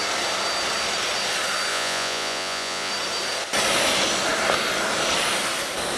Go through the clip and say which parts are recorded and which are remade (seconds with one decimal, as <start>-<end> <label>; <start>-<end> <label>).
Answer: 0.0-1.7 recorded; 1.7-2.9 remade; 2.9-6.0 recorded